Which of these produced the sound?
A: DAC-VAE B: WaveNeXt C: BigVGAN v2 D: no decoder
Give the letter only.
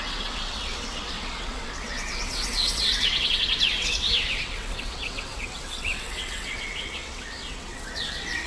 B